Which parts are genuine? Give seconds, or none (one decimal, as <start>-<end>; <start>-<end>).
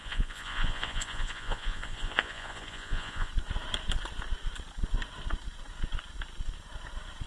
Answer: 3.3-7.3